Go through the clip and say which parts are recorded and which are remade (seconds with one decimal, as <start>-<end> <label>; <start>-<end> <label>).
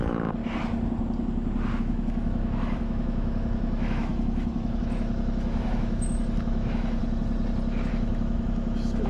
0.0-0.4 remade; 0.4-1.8 recorded; 1.8-7.0 remade; 7.0-7.9 recorded; 7.9-9.1 remade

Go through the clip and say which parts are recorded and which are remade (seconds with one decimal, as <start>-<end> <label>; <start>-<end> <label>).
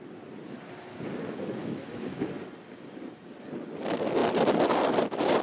0.0-1.6 recorded; 1.6-2.3 remade; 2.3-5.4 recorded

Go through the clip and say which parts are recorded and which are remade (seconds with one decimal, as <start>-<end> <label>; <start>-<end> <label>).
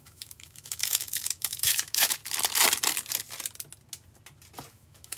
0.0-2.2 remade; 2.2-4.7 recorded; 4.7-5.2 remade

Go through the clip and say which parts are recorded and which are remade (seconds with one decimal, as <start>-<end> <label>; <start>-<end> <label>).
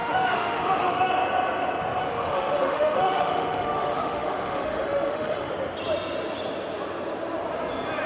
0.0-1.1 remade; 1.1-2.0 recorded; 2.0-5.5 remade; 5.5-8.1 recorded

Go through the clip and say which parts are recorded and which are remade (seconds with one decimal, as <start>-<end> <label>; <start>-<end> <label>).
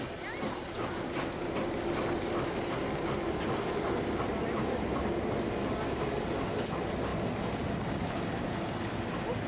0.0-9.5 recorded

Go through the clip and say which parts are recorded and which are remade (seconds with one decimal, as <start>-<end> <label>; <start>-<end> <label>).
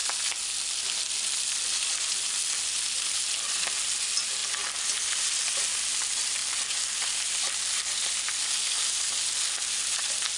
0.0-10.4 recorded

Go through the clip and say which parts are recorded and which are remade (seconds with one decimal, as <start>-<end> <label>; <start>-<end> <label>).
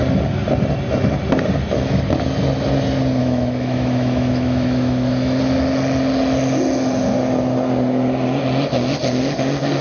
0.0-3.2 recorded; 3.2-5.4 remade; 5.4-9.8 recorded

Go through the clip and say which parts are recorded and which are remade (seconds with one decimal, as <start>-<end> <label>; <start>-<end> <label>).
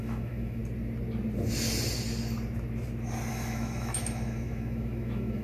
0.0-0.6 remade; 0.6-3.3 recorded; 3.3-5.4 remade